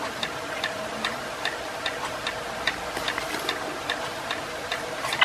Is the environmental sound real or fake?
fake